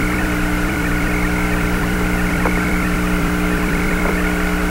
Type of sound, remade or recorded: remade